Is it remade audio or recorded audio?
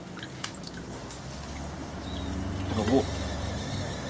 recorded